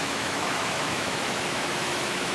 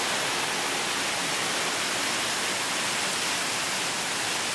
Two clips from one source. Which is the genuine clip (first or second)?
second